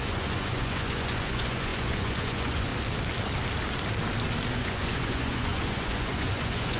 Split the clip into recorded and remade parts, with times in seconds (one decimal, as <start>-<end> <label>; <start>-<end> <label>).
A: 0.0-2.7 remade; 2.7-4.5 recorded; 4.5-6.8 remade